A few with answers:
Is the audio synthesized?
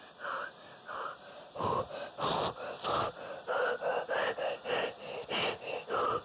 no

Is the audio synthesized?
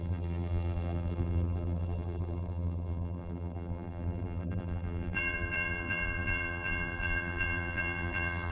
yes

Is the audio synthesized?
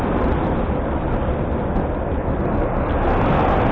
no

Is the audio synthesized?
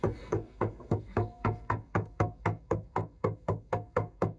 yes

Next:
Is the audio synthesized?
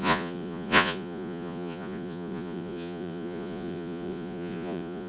yes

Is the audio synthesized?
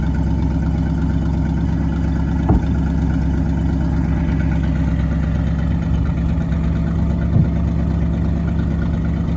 no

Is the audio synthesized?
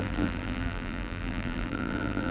yes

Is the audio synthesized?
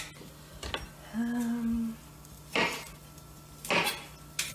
no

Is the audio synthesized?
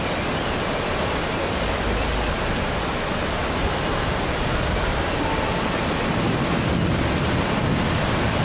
no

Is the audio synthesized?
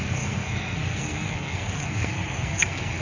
yes